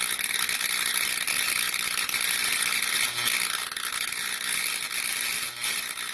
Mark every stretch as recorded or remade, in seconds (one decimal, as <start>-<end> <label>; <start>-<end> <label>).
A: 0.0-6.1 recorded